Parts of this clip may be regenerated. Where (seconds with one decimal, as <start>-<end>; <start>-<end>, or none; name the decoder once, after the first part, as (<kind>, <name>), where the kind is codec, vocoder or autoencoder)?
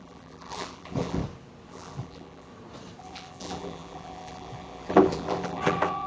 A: 0.0-1.2 (vocoder, BigVGAN v2); 1.7-2.5; 3.0-6.1